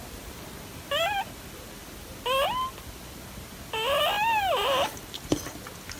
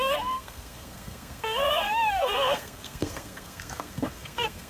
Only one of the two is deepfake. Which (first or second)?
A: second